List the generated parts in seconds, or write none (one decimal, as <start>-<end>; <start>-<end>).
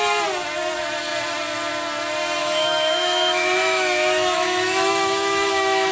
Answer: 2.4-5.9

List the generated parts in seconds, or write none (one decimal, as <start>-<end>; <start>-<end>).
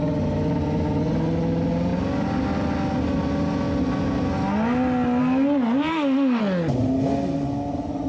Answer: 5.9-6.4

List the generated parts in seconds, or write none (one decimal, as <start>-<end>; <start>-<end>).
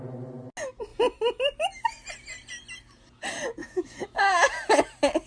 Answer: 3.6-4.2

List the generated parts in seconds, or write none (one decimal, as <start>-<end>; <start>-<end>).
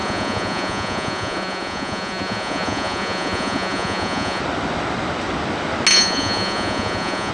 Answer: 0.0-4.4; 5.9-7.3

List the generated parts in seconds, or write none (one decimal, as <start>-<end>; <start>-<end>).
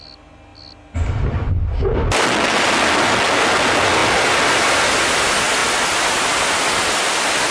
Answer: none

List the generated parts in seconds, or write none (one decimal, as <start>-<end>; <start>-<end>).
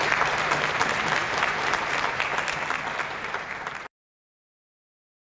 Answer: 0.0-2.3; 2.9-5.2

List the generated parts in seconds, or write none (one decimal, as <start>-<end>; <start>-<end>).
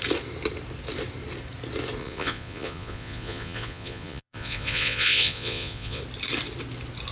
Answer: 2.0-6.0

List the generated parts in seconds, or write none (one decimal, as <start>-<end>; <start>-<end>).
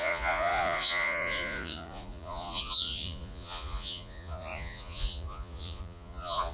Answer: 0.0-6.5